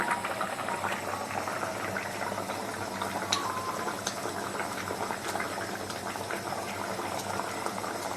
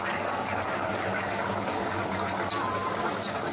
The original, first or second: first